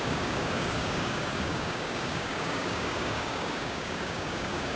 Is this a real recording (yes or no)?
no